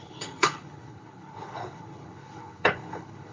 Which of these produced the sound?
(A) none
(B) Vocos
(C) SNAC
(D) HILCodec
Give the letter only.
D